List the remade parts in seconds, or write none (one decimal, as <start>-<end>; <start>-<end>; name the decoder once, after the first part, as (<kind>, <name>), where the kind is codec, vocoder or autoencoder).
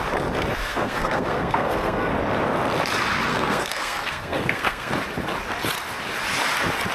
0.6-2.1 (codec, SNAC); 3.3-4.9